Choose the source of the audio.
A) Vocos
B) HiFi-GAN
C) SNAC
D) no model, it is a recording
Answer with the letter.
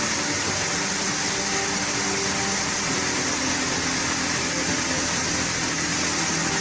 D